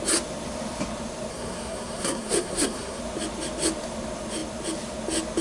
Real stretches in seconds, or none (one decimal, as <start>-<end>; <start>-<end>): 0.0-1.3; 3.0-5.4